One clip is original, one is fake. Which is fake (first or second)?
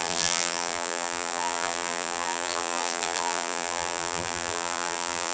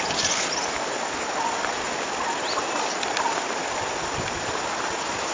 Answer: first